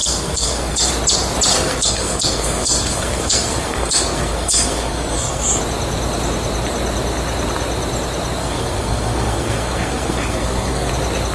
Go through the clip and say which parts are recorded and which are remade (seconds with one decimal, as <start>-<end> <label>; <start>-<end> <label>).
0.0-0.9 remade; 0.9-1.5 recorded; 1.5-5.6 remade; 5.6-8.4 recorded; 8.4-10.9 remade; 10.9-11.3 recorded